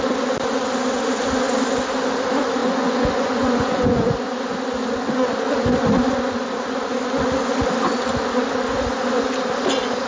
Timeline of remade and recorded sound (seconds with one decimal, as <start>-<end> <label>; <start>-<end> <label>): 0.0-2.6 recorded; 2.6-4.1 remade; 4.1-10.1 recorded